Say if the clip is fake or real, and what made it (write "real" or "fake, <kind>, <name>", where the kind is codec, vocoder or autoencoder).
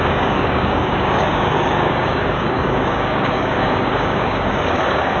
fake, codec, DAC